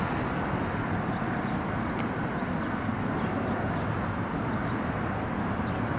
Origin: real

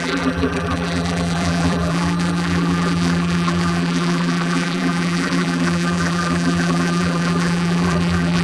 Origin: fake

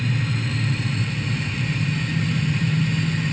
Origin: real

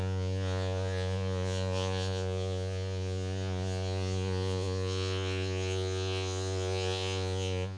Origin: fake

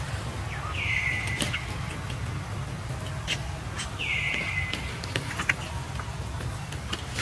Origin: real